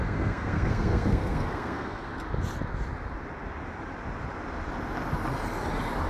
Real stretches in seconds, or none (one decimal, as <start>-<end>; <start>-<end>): 2.1-6.1